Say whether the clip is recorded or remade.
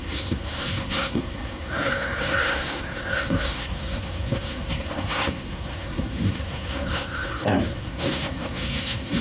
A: remade